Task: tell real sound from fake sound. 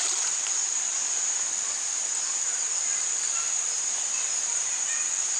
real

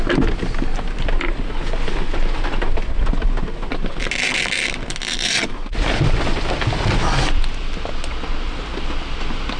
real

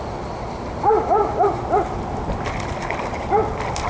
real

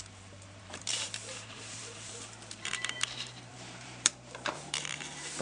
fake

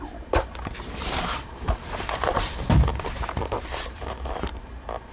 fake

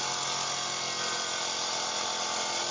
real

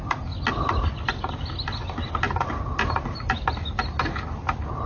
real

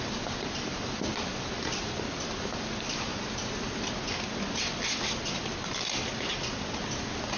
real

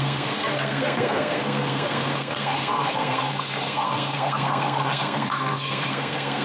fake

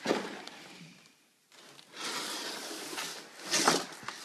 real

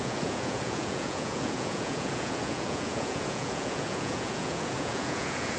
fake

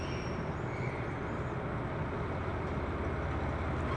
real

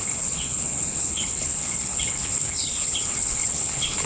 fake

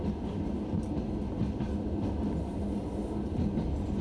real